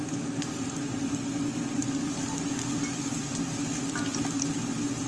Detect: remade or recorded recorded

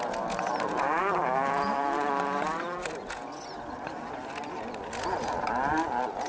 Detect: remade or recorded recorded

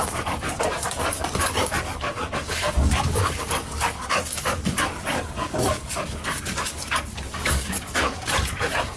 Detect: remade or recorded remade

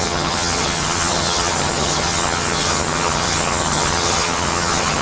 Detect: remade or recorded remade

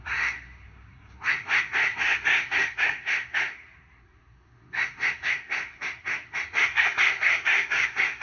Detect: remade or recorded remade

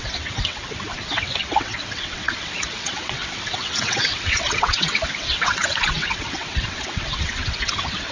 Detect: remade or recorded remade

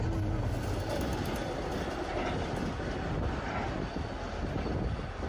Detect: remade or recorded recorded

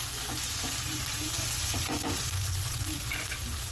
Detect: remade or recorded remade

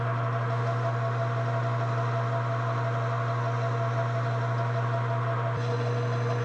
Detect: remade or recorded recorded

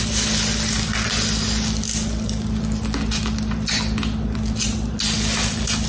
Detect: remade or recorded recorded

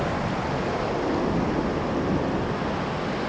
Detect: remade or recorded recorded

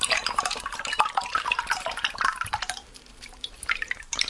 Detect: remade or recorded remade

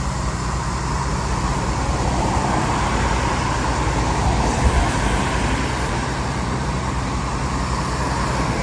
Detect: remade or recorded remade